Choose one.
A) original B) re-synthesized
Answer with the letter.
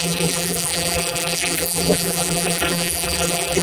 B